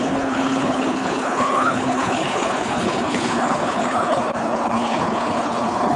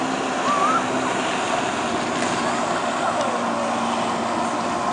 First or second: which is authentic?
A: second